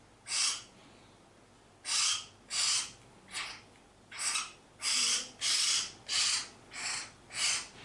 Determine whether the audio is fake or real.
real